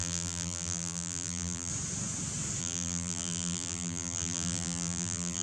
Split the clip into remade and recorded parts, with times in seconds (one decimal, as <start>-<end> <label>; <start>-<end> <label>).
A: 0.0-1.7 remade; 1.7-2.6 recorded; 2.6-5.4 remade